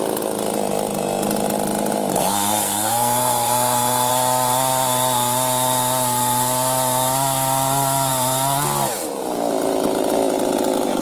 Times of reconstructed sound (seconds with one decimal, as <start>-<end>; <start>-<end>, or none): 2.1-4.1